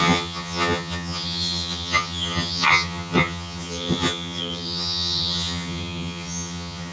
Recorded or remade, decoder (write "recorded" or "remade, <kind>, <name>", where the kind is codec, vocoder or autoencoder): remade, vocoder, HiFi-GAN